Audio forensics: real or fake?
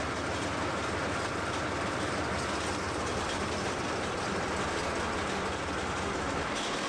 real